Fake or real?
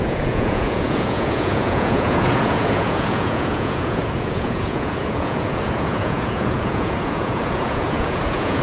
fake